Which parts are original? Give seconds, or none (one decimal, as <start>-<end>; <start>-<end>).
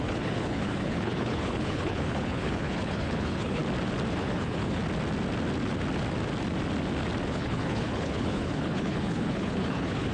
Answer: 3.6-4.2; 4.8-7.3